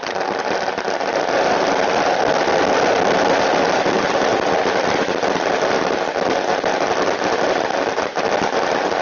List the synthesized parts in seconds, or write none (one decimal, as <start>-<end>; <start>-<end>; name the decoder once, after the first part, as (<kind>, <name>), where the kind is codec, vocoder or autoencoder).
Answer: none